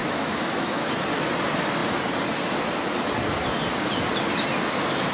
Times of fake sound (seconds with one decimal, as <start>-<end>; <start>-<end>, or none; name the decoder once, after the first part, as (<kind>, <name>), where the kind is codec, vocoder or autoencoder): 0.0-0.9 (autoencoder, DAC-VAE)